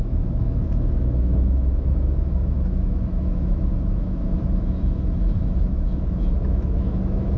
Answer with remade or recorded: remade